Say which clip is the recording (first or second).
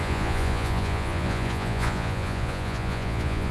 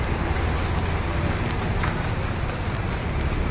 second